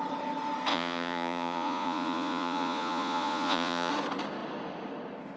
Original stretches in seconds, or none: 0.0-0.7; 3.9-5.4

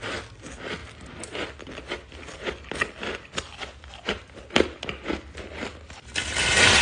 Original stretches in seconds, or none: 0.0-6.8

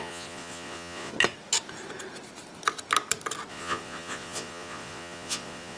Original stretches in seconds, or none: 1.1-3.5